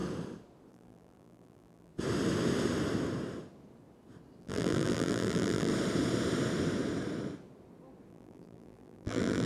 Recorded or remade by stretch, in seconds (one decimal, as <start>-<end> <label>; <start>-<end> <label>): 0.0-0.7 recorded; 0.7-1.9 remade; 1.9-4.4 recorded; 4.4-5.7 remade; 5.7-8.1 recorded; 8.1-9.5 remade